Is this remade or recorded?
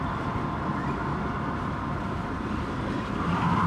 remade